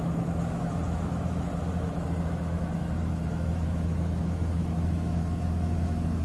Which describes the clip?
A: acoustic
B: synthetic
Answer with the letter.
B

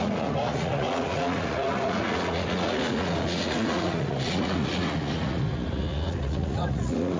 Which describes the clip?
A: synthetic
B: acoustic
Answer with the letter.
A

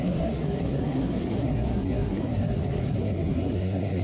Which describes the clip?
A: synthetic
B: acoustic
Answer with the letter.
A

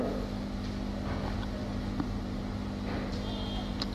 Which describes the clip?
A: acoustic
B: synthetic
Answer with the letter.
A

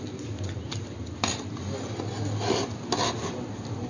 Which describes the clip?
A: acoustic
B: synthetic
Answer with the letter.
A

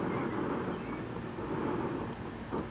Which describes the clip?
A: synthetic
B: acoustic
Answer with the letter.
B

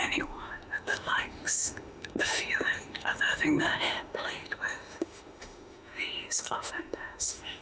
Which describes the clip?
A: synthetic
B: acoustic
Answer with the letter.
A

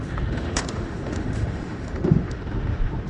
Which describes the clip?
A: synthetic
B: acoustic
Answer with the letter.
A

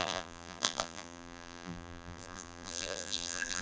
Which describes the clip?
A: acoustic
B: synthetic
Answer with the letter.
B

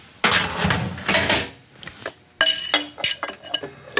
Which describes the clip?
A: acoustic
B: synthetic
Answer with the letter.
A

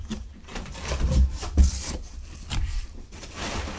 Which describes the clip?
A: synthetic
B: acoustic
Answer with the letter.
B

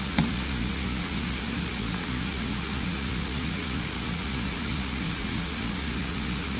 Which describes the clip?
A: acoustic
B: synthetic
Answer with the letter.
B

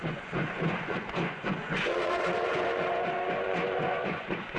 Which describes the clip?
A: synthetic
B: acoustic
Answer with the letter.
A